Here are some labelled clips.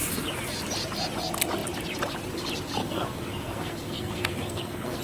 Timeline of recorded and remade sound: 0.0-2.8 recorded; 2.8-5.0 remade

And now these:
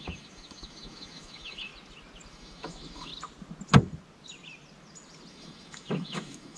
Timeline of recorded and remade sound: 0.0-1.7 remade; 1.7-2.3 recorded; 2.3-3.1 remade; 3.1-5.3 recorded; 5.3-6.6 remade

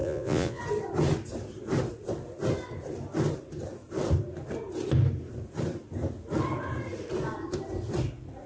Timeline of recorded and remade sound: 0.0-0.6 remade; 0.6-8.5 recorded

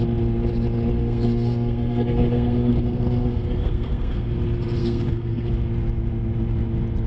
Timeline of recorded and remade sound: 0.0-1.0 recorded; 1.0-4.3 remade; 4.3-4.8 recorded; 4.8-5.5 remade; 5.5-7.1 recorded